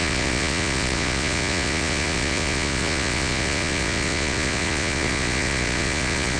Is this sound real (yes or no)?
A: no